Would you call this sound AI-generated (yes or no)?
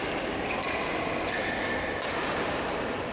no